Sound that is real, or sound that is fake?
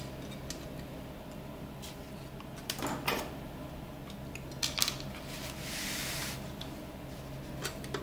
real